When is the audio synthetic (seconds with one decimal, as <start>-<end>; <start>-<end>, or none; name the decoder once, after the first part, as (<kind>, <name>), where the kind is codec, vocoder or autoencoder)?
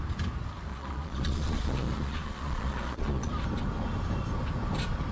0.7-3.3 (vocoder, Vocos)